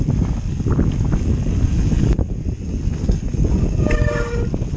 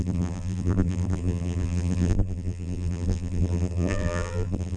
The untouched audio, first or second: first